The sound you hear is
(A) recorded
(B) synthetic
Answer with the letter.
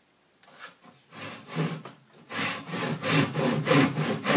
A